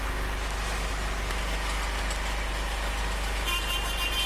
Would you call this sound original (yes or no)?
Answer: yes